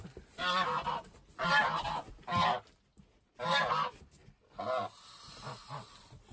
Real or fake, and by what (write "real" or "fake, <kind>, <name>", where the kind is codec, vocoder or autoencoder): real